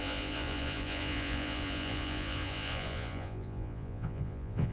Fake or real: fake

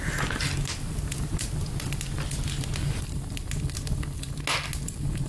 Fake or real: real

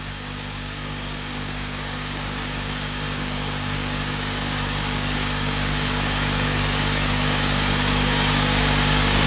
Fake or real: fake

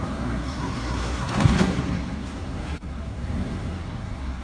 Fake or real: fake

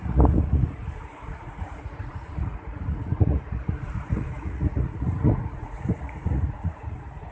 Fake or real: fake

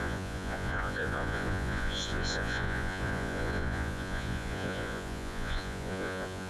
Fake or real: fake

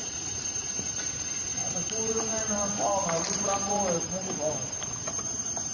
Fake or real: fake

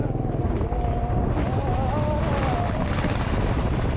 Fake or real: real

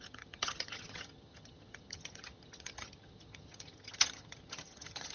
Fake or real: fake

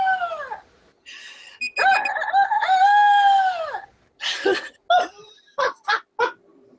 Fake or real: real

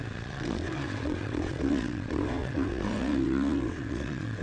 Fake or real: fake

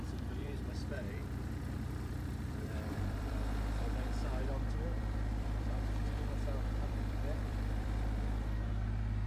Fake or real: fake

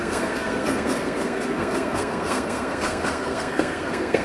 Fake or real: fake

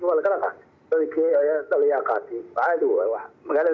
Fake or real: real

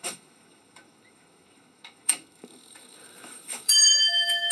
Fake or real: fake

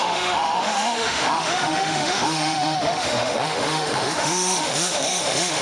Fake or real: fake